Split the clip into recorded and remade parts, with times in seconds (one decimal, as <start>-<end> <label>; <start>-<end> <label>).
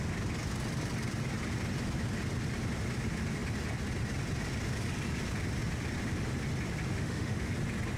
0.0-6.9 recorded; 6.9-7.5 remade; 7.5-8.0 recorded